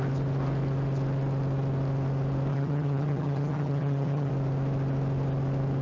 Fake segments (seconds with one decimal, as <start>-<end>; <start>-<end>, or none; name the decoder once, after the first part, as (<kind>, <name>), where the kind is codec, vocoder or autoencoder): 2.5-4.3 (vocoder, HiFi-GAN)